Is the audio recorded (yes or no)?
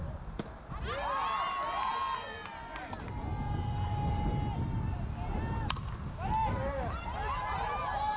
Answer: yes